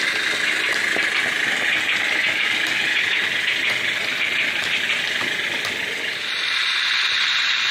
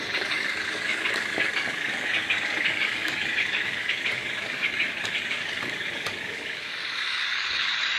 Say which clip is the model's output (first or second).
second